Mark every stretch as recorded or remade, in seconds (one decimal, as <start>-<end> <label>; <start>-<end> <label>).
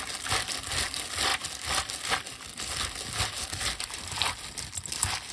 0.0-5.3 recorded